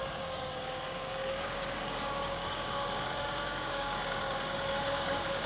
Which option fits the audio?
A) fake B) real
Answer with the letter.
A